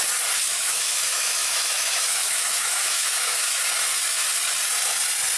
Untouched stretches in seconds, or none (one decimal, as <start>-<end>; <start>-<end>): 0.0-0.5; 3.6-5.4